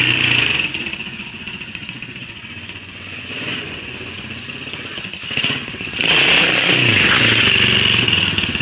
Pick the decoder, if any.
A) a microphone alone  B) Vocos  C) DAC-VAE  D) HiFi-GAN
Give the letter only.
B